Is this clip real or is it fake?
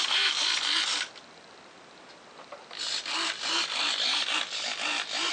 real